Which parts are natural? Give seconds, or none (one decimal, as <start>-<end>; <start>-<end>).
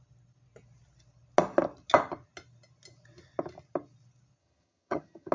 0.0-4.4